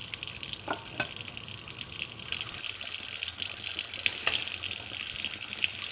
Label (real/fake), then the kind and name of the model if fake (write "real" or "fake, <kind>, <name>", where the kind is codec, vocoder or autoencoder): real